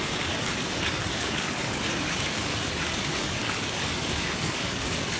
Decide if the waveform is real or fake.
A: fake